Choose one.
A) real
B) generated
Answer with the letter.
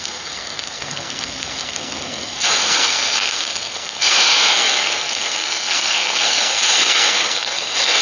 B